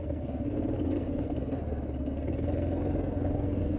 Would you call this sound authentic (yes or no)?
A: no